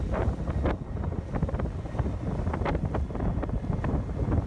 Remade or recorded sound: recorded